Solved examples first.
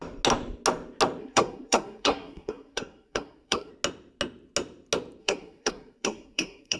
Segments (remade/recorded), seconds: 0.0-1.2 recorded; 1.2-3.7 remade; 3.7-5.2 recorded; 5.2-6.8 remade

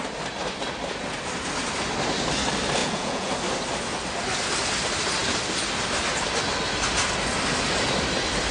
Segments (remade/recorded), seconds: 0.0-2.8 recorded; 2.8-3.3 remade; 3.3-8.5 recorded

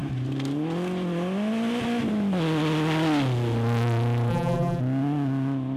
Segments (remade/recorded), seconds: 0.0-4.3 recorded; 4.3-4.8 remade; 4.8-5.8 recorded

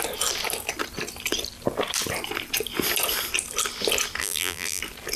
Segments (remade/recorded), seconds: 0.0-4.2 recorded; 4.2-4.8 remade; 4.8-5.2 recorded

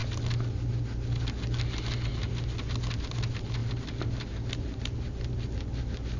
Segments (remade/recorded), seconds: 0.0-6.2 recorded

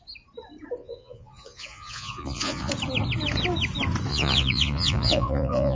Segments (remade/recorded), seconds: 0.0-0.8 recorded; 0.8-2.7 remade; 2.7-4.1 recorded; 4.1-5.8 remade

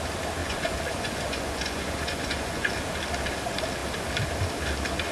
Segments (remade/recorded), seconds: 0.0-0.4 recorded; 0.4-2.7 remade; 2.7-5.1 recorded